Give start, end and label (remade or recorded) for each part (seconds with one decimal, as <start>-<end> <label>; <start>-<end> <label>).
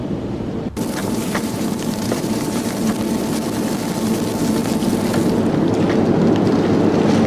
0.0-1.0 recorded; 1.0-2.7 remade; 2.7-7.3 recorded